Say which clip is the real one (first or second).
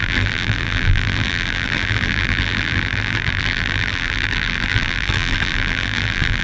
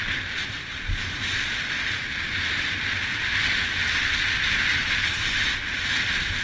second